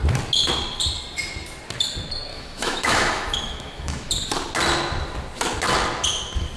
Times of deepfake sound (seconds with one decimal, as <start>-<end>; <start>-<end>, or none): 2.3-4.1